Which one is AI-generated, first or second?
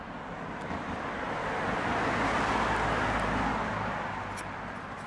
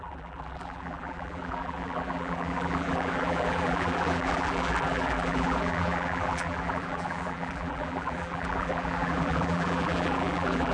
second